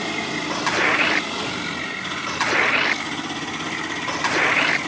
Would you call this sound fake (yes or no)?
no